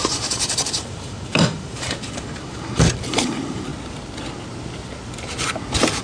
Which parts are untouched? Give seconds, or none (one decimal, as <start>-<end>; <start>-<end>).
3.7-6.0